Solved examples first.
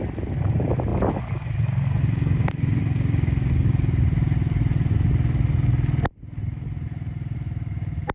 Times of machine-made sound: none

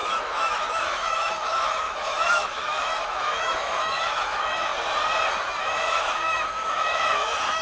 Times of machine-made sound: 0.0-4.7 (autoencoder, DAC-VAE); 5.6-7.6

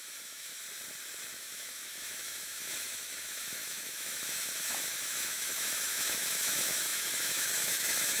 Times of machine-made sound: 0.0-0.6 (autoencoder, DAC-VAE); 1.4-8.2

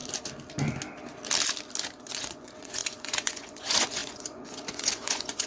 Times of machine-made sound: 2.1-5.5 (vocoder, Vocos)